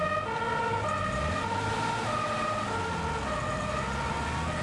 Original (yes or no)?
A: yes